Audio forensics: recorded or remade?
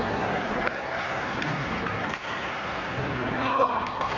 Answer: remade